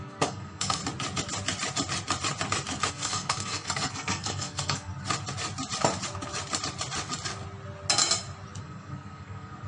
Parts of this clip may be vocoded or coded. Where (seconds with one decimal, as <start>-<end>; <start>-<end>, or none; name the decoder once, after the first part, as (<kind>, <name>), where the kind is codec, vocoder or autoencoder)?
0.0-0.8 (codec, SNAC); 2.9-4.9; 8.6-9.7